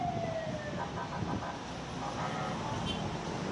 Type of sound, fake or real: real